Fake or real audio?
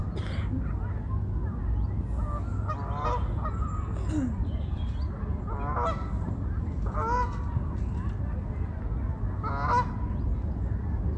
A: real